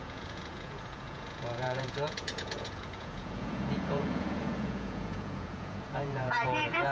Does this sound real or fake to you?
fake